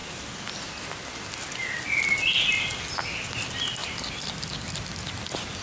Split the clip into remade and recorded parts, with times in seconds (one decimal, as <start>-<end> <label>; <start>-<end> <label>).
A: 0.0-3.8 recorded; 3.8-4.5 remade; 4.5-5.6 recorded